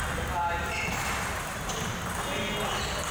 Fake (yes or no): no